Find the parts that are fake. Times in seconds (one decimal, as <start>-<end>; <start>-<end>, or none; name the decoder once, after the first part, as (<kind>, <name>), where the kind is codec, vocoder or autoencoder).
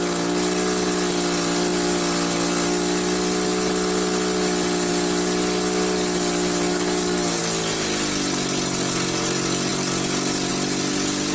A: 6.7-7.4 (codec, DAC)